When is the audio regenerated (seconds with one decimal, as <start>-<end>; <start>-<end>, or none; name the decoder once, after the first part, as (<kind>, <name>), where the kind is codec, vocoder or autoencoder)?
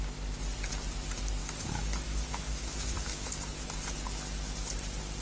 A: 1.4-3.3 (autoencoder, DAC-VAE)